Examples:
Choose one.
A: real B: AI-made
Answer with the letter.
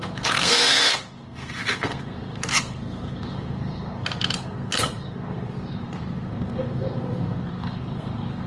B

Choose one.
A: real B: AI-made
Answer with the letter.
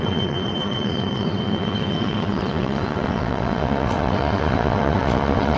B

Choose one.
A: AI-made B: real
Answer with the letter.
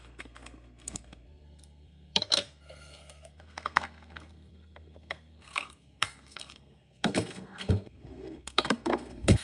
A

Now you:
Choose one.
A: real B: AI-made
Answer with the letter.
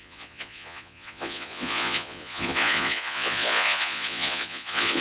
B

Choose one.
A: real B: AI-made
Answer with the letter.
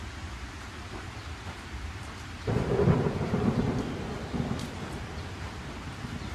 B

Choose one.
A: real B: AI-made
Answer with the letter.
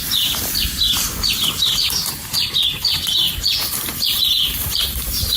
B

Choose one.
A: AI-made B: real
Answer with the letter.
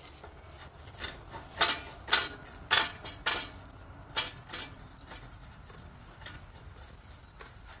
B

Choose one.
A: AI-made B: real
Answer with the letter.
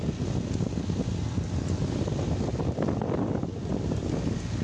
B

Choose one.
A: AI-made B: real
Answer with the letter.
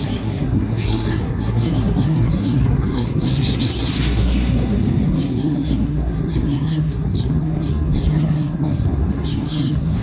A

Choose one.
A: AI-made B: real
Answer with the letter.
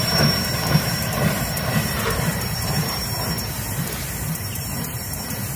A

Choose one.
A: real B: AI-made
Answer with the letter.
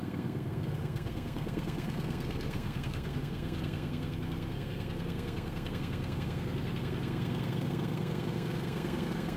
B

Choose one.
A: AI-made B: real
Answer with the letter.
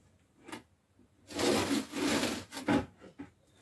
B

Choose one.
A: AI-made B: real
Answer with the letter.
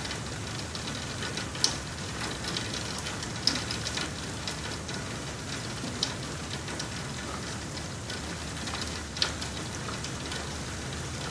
B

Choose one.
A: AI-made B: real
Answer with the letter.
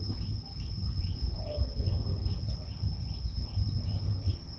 A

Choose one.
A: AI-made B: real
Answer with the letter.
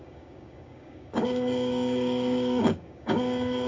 A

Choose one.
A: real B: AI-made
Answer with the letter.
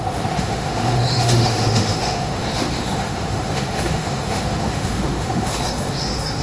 B